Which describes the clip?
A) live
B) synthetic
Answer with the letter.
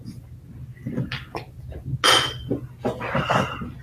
A